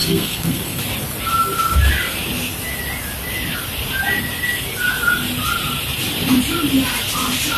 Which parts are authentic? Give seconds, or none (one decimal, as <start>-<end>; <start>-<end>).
0.8-7.6

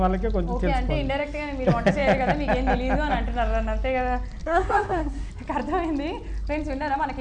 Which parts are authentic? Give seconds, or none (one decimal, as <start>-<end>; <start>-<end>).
0.0-4.4; 5.3-7.2

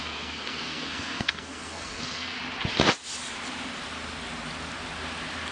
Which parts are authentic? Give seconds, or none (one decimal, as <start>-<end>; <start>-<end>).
2.4-5.5

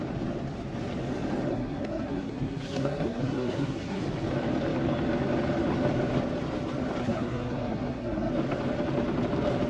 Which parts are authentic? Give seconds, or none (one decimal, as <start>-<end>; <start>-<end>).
0.0-1.5; 4.0-7.0; 8.3-9.7